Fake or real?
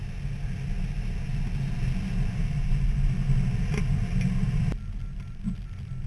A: real